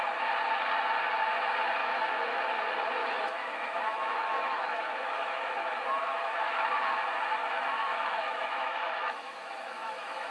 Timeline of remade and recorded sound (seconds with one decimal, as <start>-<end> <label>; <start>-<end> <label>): 0.0-1.8 recorded; 1.8-2.4 remade; 2.4-3.0 recorded; 3.0-6.4 remade; 6.4-7.4 recorded; 7.4-10.3 remade